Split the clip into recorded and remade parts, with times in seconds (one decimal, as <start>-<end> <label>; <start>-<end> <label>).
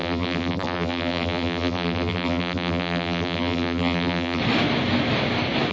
0.0-4.4 remade; 4.4-5.7 recorded